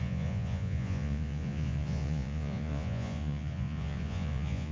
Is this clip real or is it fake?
fake